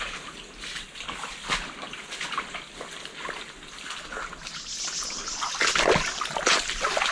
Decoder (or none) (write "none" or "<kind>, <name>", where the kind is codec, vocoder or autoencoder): none